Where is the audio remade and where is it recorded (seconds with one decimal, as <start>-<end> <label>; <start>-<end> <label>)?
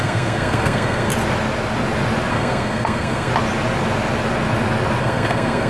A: 0.0-1.1 remade; 1.1-2.3 recorded; 2.3-3.3 remade; 3.3-5.0 recorded; 5.0-5.7 remade